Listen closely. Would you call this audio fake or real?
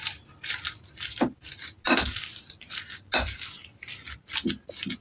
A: real